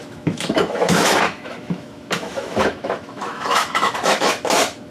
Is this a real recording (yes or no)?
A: no